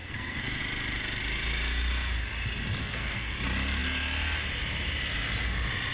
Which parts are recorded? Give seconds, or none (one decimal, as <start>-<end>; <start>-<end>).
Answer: 0.6-2.8; 3.4-5.9